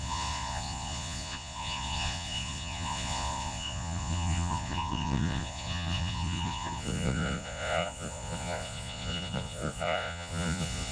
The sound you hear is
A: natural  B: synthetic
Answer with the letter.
B